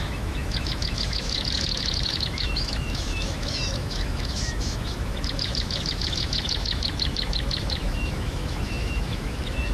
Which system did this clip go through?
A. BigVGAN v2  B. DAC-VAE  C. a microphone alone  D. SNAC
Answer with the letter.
B